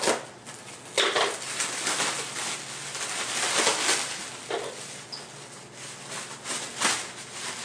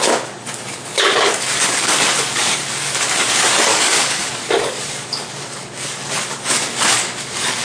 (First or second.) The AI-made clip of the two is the second